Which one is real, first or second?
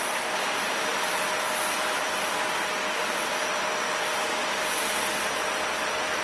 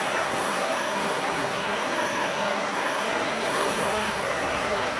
first